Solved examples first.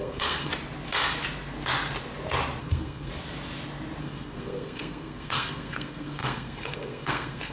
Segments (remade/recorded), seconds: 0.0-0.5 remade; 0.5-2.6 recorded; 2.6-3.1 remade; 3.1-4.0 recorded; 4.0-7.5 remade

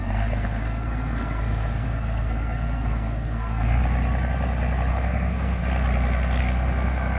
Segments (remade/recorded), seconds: 0.0-3.8 remade; 3.8-4.9 recorded; 4.9-5.6 remade; 5.6-6.4 recorded; 6.4-7.2 remade

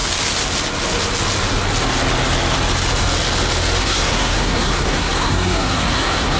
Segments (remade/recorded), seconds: 0.0-3.8 recorded; 3.8-6.4 remade

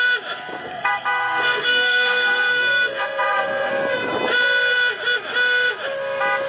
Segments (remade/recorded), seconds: 0.0-0.6 recorded; 0.6-3.7 remade; 3.7-6.5 recorded

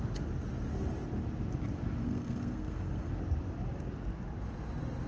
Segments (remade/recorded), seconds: 0.0-2.0 recorded; 2.0-3.1 remade; 3.1-5.1 recorded

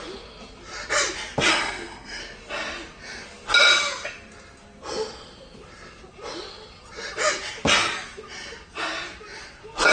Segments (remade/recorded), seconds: 0.0-1.5 recorded; 1.5-2.2 remade; 2.2-9.9 recorded

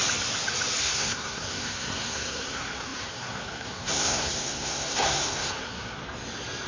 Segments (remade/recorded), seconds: 0.0-0.8 recorded; 0.8-6.0 remade; 6.0-6.7 recorded

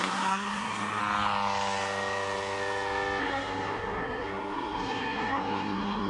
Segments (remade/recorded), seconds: 0.0-1.0 remade; 1.0-3.2 recorded; 3.2-6.1 remade